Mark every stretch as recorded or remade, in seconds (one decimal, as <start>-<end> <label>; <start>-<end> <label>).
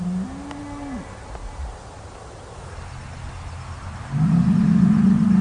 0.0-5.4 recorded